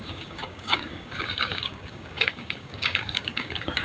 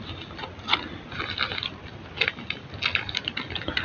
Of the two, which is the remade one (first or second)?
first